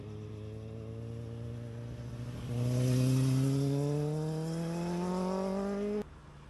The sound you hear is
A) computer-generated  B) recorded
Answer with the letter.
B